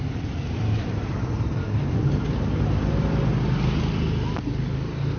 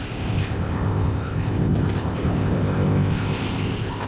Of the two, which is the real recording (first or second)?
first